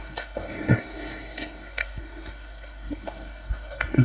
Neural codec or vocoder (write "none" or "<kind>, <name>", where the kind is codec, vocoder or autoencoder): codec, SNAC